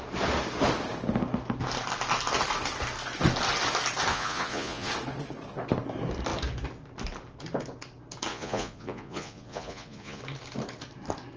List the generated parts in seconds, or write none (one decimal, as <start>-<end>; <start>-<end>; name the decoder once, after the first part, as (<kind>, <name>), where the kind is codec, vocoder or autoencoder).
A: 4.1-4.9 (vocoder, Vocos); 8.3-10.2